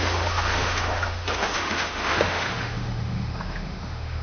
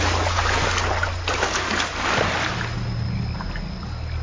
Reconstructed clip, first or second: first